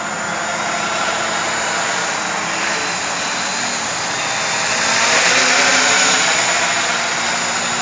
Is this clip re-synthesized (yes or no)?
no